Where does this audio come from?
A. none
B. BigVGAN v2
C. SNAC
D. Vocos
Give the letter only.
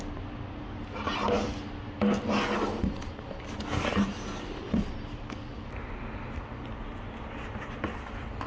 A